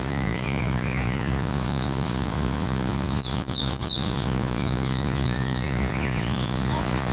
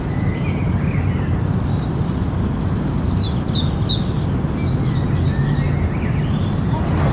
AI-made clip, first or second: first